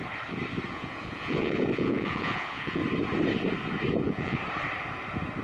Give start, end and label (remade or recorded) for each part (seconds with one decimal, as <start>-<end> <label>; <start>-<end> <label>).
0.0-0.7 recorded; 0.7-2.8 remade; 2.8-4.0 recorded; 4.0-4.4 remade; 4.4-5.4 recorded